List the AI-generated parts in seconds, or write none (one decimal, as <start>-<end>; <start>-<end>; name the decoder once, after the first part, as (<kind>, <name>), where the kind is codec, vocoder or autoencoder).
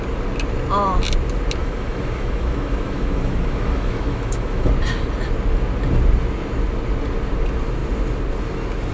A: 1.6-4.7 (autoencoder, DAC-VAE)